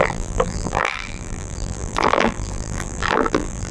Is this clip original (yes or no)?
no